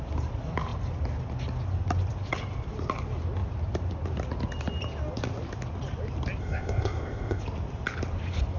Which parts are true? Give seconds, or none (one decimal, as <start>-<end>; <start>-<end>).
0.0-6.4; 7.4-8.6